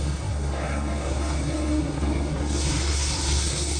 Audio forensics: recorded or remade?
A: remade